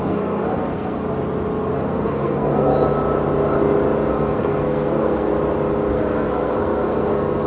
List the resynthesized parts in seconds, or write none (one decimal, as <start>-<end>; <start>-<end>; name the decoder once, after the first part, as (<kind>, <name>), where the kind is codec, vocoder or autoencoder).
0.0-1.0 (codec, SNAC); 1.7-2.7; 4.1-5.3; 5.9-7.5